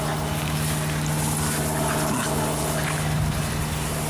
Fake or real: real